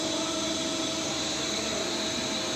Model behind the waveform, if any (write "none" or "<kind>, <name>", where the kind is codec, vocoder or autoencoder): vocoder, BigVGAN v2